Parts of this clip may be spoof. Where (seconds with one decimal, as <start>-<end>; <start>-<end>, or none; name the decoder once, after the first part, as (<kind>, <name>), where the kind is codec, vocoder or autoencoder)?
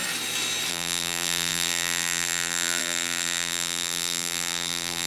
0.7-5.1 (vocoder, BigVGAN v2)